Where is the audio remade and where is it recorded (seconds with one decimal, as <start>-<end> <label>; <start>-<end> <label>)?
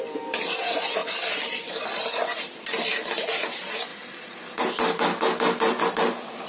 0.0-3.9 remade; 3.9-5.8 recorded; 5.8-6.5 remade